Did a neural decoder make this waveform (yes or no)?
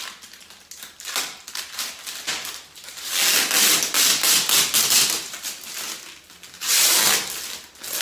no